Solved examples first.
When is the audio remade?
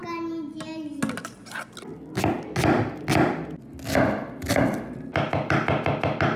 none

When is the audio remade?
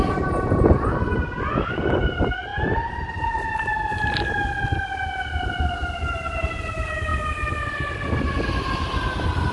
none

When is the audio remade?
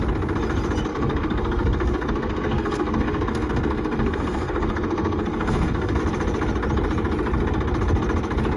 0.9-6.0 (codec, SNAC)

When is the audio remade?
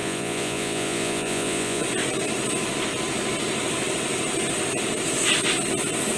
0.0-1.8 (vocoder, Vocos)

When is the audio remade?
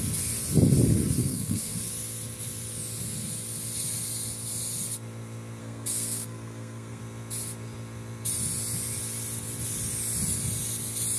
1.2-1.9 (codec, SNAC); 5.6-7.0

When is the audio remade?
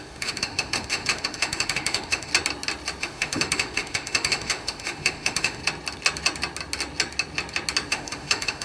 0.0-2.3 (autoencoder, DAC-VAE); 3.0-5.6; 7.9-8.6